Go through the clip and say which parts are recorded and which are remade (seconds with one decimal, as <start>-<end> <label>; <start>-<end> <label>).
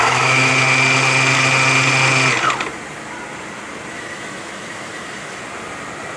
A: 0.0-0.5 remade; 0.5-3.9 recorded; 3.9-5.4 remade; 5.4-6.2 recorded